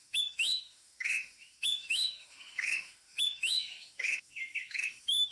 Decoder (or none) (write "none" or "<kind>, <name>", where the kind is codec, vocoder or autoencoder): autoencoder, DAC-VAE